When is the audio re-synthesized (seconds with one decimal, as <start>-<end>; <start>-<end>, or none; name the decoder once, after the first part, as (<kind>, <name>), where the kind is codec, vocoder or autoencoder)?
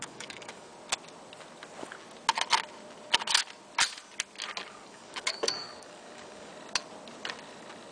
0.0-0.7 (codec, DAC); 4.7-6.5